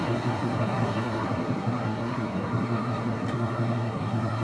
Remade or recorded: remade